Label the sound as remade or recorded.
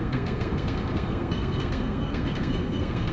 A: remade